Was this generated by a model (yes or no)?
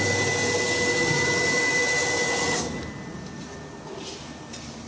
no